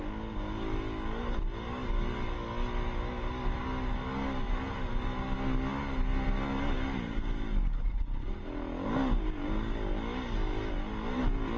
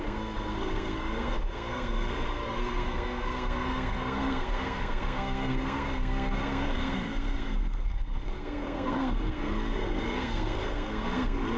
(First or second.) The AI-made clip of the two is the second